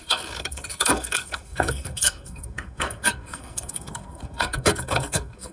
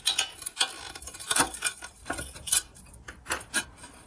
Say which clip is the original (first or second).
second